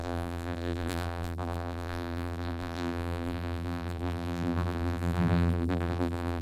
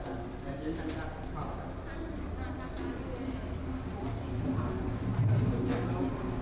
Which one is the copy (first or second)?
first